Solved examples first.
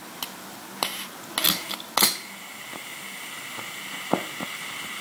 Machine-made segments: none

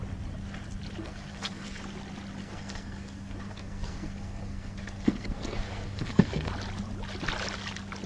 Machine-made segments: 1.0-1.8 (codec, SNAC); 2.4-6.5

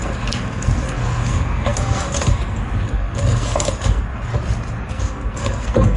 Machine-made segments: 0.0-4.3 (codec, SNAC); 4.9-6.0

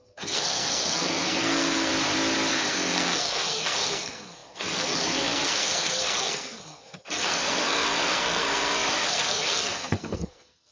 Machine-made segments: 0.0-1.9 (codec, SNAC); 2.5-10.7

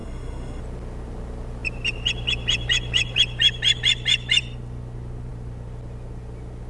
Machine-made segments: 0.0-0.6 (codec, SNAC)

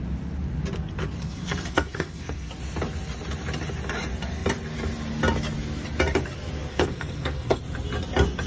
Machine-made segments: 1.2-2.5 (codec, SNAC); 6.7-7.6

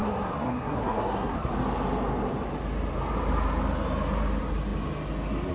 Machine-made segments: 0.0-1.5 (codec, SNAC)

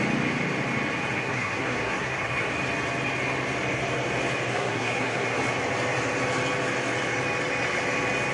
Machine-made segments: 1.2-2.5 (codec, SNAC); 4.5-5.3